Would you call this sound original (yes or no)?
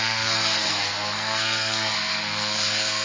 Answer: no